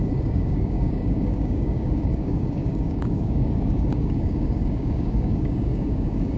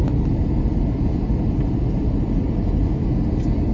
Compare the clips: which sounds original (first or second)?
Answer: second